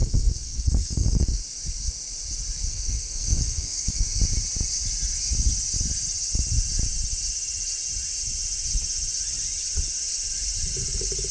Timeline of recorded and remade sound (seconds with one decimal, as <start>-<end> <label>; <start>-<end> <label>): 0.0-1.4 remade; 1.4-2.7 recorded; 2.7-4.2 remade; 4.2-11.3 recorded